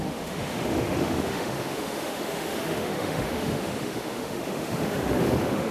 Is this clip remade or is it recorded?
remade